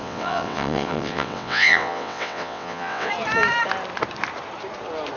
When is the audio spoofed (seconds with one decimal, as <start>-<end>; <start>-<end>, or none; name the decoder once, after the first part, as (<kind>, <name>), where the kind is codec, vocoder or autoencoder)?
0.0-3.1 (vocoder, WaveNeXt)